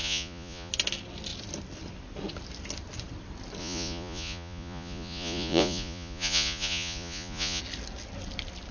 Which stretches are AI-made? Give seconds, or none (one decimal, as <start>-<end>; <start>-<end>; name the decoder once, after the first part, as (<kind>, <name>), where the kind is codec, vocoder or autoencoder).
0.0-0.7 (vocoder, Vocos); 3.6-7.6